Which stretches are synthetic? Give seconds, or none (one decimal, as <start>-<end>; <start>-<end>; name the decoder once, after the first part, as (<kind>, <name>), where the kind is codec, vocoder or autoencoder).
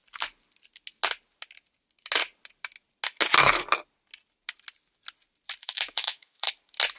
5.6-6.5 (autoencoder, DAC-VAE)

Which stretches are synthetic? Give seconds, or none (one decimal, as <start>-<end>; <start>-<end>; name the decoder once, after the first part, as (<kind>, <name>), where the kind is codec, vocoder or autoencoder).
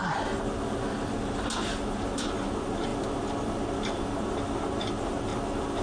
none